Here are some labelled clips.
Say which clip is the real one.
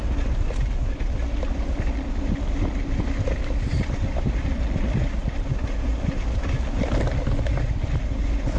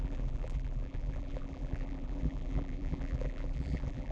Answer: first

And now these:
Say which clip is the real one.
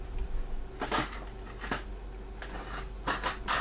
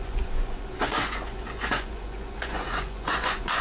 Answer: first